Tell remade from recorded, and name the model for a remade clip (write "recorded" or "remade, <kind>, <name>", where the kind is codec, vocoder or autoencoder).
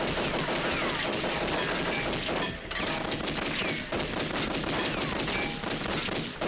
recorded